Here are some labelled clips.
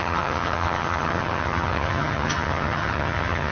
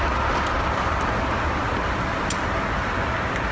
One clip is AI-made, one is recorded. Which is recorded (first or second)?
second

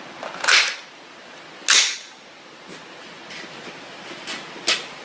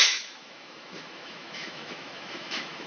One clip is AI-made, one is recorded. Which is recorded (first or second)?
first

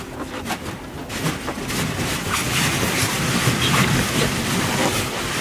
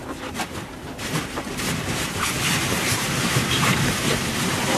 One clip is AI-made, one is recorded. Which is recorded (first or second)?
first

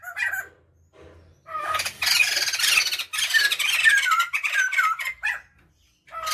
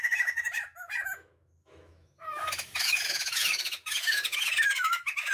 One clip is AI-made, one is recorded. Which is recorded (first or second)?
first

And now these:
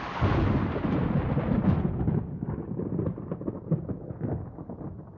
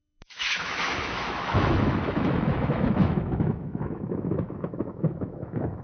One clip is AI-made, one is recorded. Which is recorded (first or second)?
first